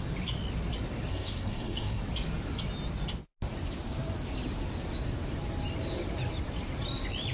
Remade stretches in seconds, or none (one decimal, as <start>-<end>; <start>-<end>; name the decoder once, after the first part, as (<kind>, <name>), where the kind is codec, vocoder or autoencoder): 1.1-2.0 (codec, SNAC)